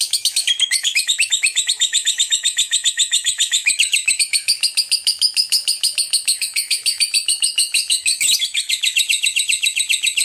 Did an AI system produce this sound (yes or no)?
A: yes